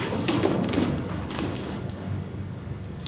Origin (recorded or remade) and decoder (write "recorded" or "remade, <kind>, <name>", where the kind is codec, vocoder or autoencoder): remade, codec, DAC